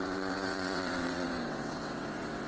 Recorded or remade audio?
remade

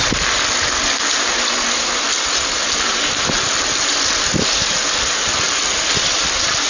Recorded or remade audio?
recorded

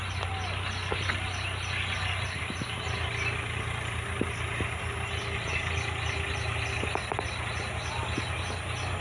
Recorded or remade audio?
recorded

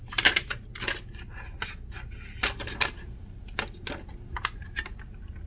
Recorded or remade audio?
recorded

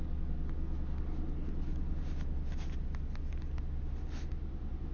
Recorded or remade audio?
recorded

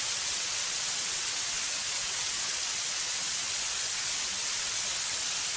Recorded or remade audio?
remade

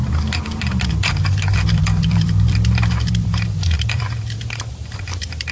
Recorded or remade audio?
remade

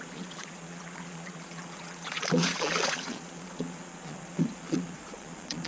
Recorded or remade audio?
remade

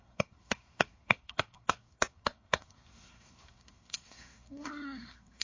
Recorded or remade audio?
remade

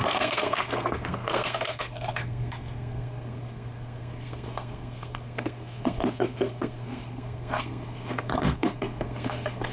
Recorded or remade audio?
remade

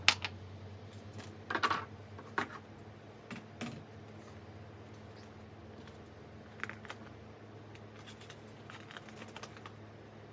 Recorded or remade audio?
recorded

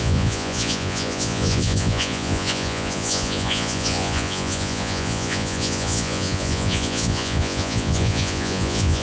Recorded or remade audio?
remade